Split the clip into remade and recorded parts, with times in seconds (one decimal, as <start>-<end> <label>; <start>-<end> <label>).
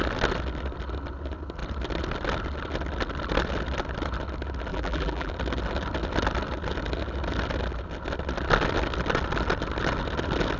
0.0-4.7 recorded; 4.7-5.3 remade; 5.3-10.6 recorded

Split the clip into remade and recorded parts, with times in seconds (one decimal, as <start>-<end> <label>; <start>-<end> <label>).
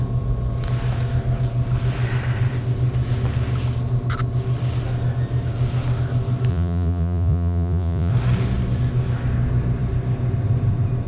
0.0-6.5 recorded; 6.5-8.1 remade; 8.1-11.1 recorded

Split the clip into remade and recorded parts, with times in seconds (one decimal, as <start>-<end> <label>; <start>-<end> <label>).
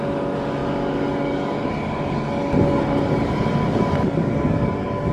0.0-5.1 remade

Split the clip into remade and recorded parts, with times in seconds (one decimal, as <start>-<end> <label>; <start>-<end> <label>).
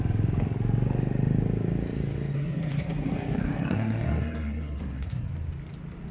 0.0-2.3 recorded; 2.3-5.3 remade; 5.3-6.1 recorded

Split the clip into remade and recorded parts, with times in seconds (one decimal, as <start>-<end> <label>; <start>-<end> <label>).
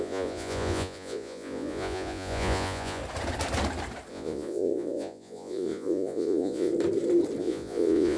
0.0-3.0 remade; 3.0-4.1 recorded; 4.1-6.7 remade; 6.7-7.4 recorded; 7.4-8.2 remade